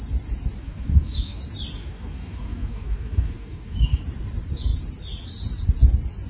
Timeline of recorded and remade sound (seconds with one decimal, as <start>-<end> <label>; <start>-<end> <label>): 0.0-0.6 recorded; 0.6-1.4 remade; 1.4-1.8 recorded; 1.8-4.0 remade; 4.0-6.3 recorded

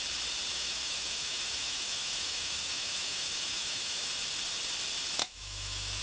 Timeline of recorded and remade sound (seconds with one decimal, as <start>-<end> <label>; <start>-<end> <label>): 0.0-0.5 recorded; 0.5-4.1 remade; 4.1-5.2 recorded; 5.2-6.0 remade